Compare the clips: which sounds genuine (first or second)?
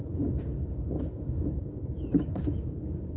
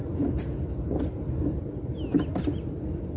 second